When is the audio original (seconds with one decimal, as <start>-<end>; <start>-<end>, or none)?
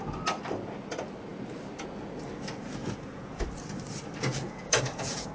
0.0-2.8; 3.4-4.3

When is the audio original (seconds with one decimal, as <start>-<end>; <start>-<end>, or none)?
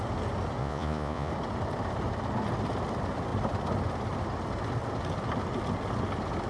0.0-0.6; 1.3-6.5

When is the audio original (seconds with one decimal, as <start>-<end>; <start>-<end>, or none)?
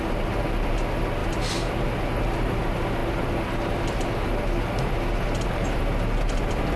0.0-6.8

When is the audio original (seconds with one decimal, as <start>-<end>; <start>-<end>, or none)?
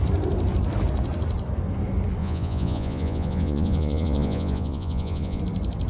0.0-2.2; 5.4-5.9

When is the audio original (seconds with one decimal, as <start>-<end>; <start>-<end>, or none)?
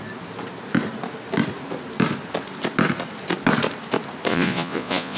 0.0-4.3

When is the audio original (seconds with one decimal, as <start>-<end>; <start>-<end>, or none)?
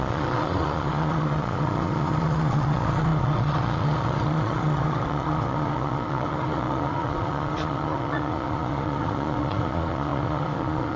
none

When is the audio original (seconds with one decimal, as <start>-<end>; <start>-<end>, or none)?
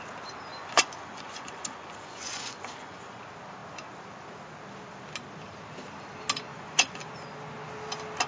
0.0-0.5; 3.2-6.5; 7.0-8.3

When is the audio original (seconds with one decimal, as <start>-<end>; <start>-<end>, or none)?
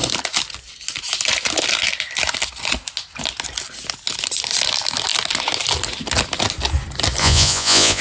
0.0-7.2